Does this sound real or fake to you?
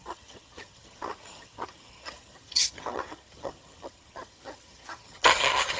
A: fake